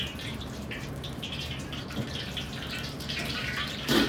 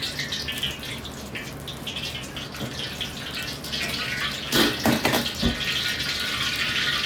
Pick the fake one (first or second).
first